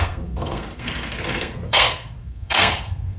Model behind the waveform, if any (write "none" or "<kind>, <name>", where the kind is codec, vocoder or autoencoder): codec, SNAC